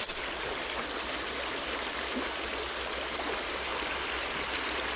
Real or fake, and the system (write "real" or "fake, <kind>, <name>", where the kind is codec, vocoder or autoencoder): real